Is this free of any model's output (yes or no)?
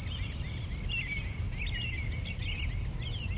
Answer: yes